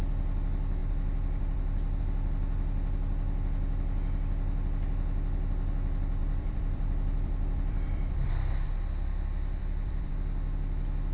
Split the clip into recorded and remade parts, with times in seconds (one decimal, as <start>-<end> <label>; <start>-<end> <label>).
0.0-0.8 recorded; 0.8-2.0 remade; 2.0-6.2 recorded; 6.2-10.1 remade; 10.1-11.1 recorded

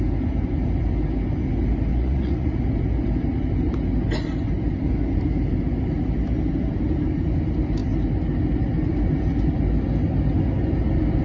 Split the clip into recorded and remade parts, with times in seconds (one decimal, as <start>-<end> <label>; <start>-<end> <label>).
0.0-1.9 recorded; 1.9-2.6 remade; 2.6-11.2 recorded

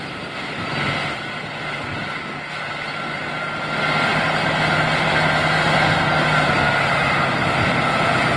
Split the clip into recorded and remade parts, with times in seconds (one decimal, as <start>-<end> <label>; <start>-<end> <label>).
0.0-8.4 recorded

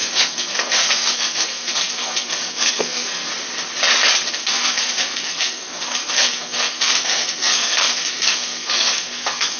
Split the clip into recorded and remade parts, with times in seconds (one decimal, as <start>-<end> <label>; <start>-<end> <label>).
0.0-3.3 remade; 3.3-4.3 recorded; 4.3-9.6 remade